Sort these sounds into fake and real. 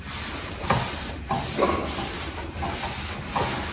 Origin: real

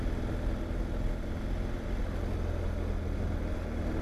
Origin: real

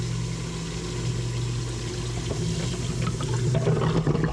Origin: real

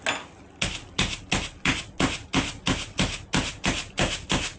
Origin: real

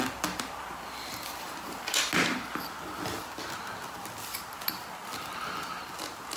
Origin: real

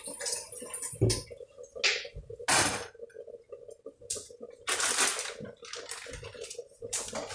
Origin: real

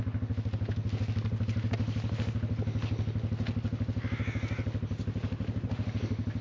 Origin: real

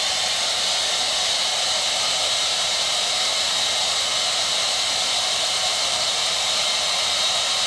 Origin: fake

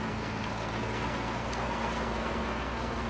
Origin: fake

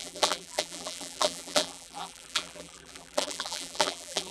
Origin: fake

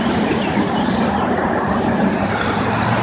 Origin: real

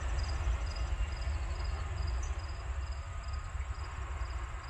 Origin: real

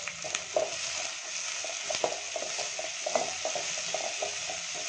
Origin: real